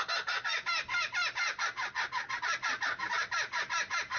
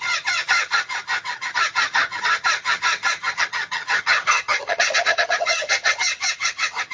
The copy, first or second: second